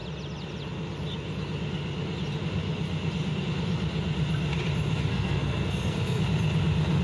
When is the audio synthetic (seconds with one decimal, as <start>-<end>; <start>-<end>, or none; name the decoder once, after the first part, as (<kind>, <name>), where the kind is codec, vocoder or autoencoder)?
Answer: 5.1-6.2 (codec, SNAC)